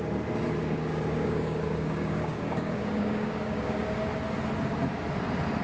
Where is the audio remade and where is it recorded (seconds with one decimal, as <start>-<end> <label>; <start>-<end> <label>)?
0.0-0.6 recorded; 0.6-3.8 remade; 3.8-5.6 recorded